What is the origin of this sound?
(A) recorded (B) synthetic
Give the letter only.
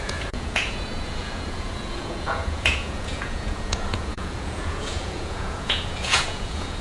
B